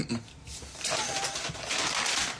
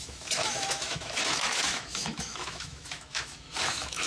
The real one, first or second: first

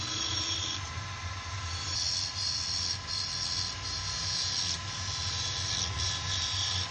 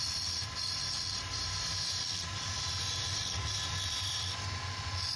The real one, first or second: first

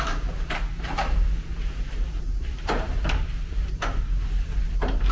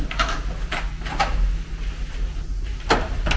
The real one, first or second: second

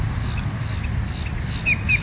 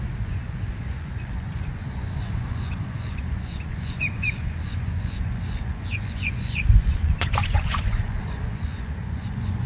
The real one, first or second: first